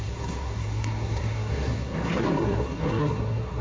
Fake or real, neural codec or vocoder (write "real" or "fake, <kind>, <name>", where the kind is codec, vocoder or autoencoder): fake, codec, SNAC